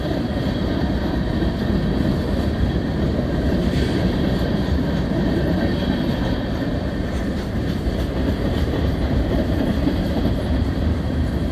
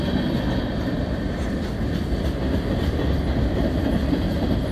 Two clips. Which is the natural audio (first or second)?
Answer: second